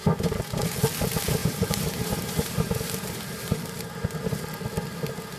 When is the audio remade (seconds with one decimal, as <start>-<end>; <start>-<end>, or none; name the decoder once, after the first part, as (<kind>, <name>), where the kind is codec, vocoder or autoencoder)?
1.4-4.4 (vocoder, BigVGAN v2)